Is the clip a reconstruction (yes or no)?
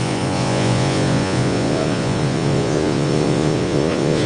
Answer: yes